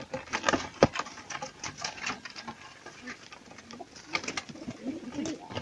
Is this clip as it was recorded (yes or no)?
yes